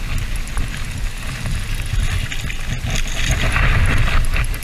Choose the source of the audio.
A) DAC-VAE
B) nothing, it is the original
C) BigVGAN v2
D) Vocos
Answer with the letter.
B